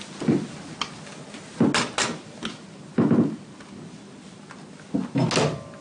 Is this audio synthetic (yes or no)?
no